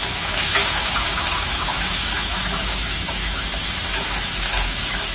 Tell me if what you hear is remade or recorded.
remade